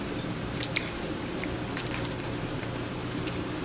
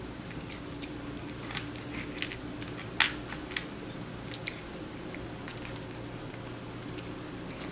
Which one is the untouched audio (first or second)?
second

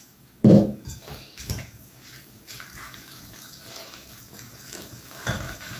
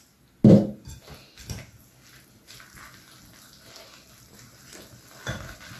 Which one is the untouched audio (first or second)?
second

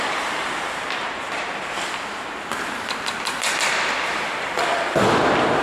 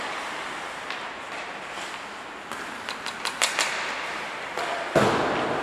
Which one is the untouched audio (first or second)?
second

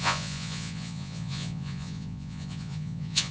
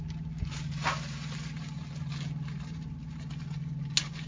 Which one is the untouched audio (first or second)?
second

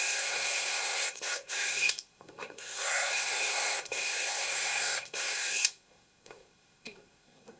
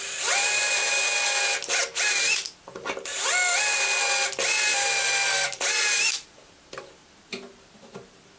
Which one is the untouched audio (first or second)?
second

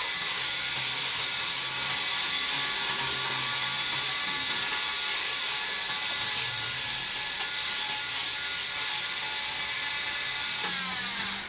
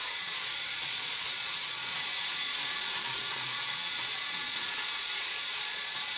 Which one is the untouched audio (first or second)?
first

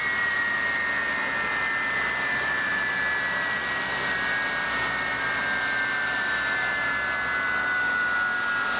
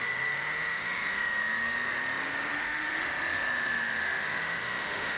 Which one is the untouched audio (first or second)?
first